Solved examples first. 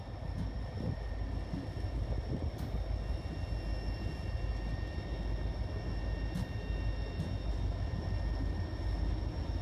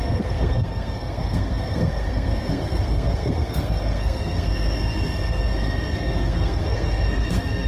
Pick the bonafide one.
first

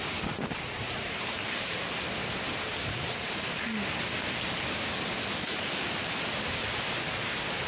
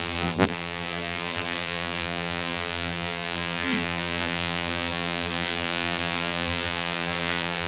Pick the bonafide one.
first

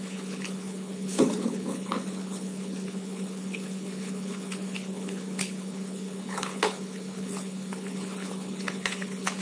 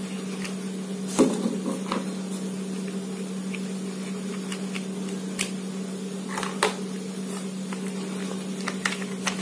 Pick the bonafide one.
second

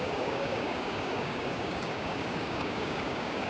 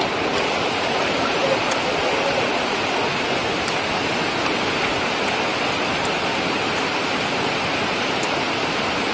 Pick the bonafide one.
second